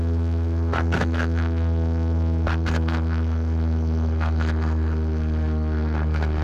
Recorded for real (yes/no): no